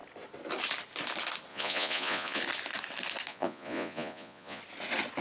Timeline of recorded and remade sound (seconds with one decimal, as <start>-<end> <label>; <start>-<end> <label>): 0.0-1.5 recorded; 1.5-2.4 remade; 2.4-3.3 recorded; 3.3-4.6 remade; 4.6-5.2 recorded